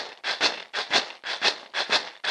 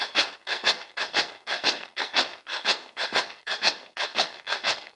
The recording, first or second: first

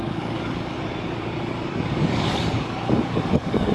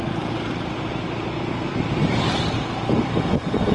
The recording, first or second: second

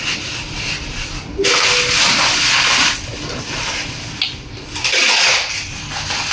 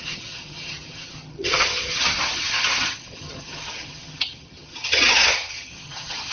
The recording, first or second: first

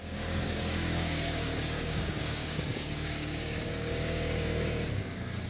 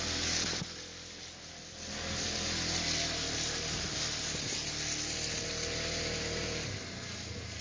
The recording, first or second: second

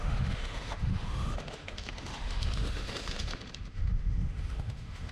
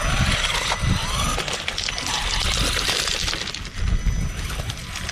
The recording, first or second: second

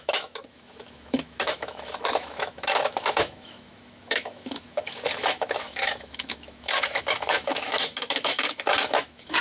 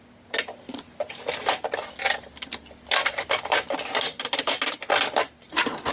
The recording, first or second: second